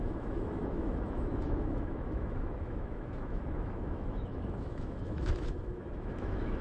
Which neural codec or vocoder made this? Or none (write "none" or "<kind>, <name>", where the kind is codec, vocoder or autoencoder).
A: autoencoder, DAC-VAE